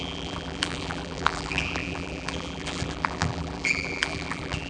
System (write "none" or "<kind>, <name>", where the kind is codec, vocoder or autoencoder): vocoder, BigVGAN v2